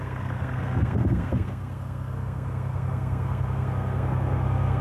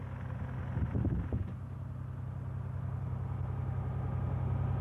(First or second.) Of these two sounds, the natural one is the second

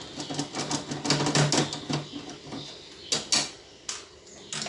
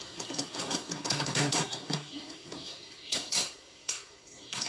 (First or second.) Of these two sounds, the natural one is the first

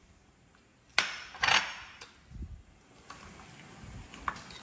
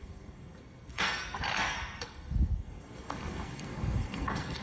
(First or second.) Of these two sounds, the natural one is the first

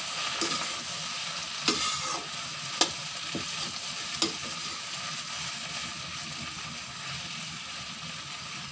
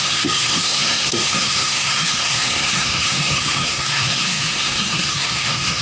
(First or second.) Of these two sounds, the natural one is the first